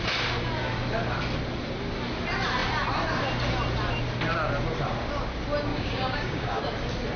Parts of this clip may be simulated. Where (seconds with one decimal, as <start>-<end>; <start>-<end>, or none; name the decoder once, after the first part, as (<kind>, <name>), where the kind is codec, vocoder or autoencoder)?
5.7-6.6 (codec, DAC)